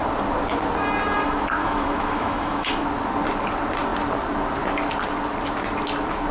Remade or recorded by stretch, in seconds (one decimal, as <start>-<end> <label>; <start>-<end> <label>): 0.0-1.6 recorded; 1.6-2.7 remade; 2.7-6.3 recorded